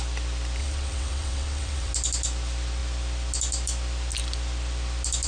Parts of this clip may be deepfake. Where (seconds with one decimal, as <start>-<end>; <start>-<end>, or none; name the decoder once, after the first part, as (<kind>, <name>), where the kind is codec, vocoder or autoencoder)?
0.6-1.9 (vocoder, WaveNeXt)